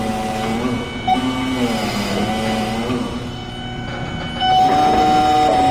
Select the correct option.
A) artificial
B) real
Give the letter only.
B